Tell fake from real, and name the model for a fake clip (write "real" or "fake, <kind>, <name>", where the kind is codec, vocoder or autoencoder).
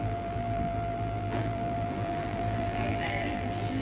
fake, vocoder, BigVGAN v2